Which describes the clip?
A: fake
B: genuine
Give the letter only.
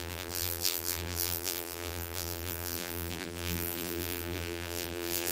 A